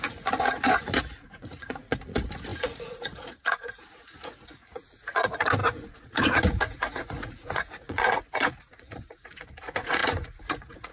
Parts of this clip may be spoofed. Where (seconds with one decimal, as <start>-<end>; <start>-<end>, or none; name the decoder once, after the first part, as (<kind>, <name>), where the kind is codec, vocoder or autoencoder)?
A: 0.0-10.9 (vocoder, Vocos)

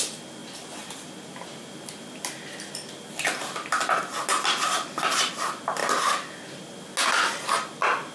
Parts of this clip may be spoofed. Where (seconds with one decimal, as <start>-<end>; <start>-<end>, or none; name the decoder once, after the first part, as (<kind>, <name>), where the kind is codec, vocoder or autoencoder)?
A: none